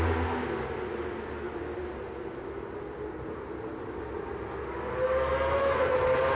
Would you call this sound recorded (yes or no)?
yes